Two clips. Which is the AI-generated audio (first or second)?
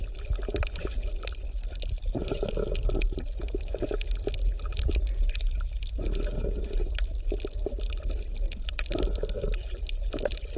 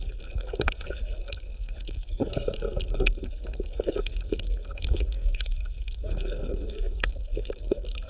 second